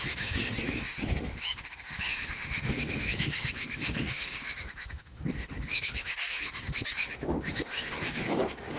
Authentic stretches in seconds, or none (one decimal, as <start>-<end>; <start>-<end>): none